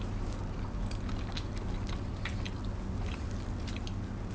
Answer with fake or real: real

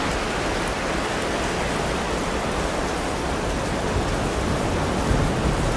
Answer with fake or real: real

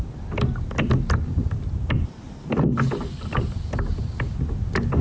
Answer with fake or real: real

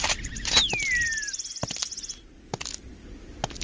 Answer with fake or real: real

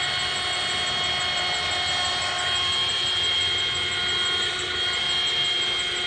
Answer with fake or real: real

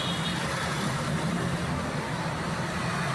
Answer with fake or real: real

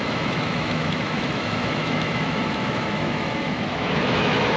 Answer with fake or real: fake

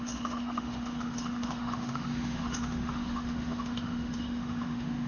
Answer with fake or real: fake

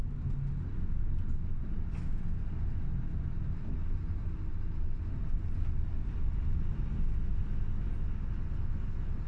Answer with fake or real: real